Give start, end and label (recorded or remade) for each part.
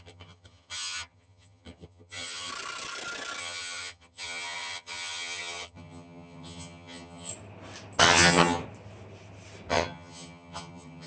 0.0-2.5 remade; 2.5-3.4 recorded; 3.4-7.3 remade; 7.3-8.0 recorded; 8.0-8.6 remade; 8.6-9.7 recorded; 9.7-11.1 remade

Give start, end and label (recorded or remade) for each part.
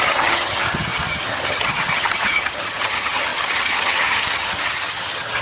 0.0-5.4 remade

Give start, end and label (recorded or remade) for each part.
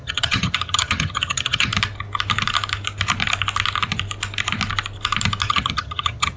0.0-1.7 remade; 1.7-5.5 recorded; 5.5-6.4 remade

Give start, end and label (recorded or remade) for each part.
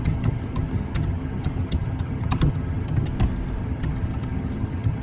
0.0-3.1 remade; 3.1-3.6 recorded; 3.6-5.0 remade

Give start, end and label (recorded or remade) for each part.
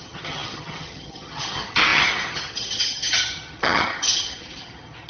0.0-5.1 remade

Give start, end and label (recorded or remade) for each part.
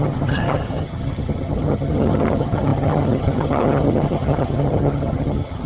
0.0-5.7 remade